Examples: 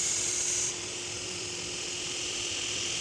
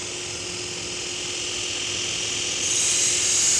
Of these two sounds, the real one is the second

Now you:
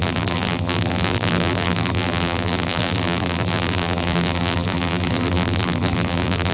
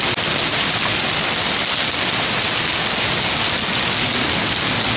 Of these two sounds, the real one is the second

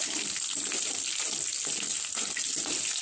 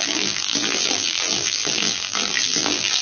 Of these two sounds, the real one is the first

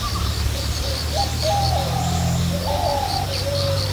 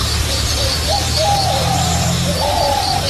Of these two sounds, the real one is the first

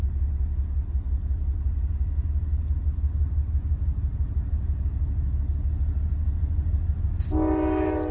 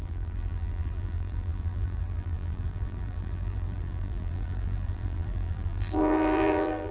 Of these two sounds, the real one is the first